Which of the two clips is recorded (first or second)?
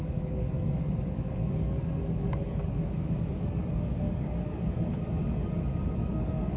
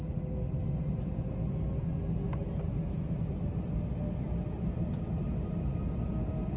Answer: second